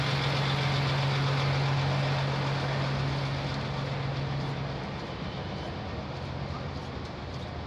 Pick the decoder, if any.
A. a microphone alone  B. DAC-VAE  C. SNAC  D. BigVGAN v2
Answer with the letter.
A